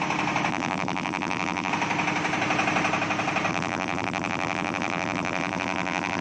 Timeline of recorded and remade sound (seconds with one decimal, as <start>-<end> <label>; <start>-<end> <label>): 0.0-0.5 recorded; 0.5-1.7 remade; 1.7-3.5 recorded; 3.5-6.2 remade